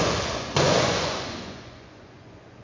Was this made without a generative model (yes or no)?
no